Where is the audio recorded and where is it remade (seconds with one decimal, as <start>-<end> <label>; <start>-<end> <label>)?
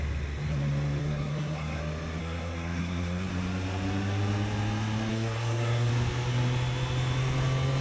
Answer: 0.0-1.0 recorded; 1.0-1.8 remade; 1.8-2.2 recorded; 2.2-3.3 remade; 3.3-5.1 recorded; 5.1-5.9 remade; 5.9-7.8 recorded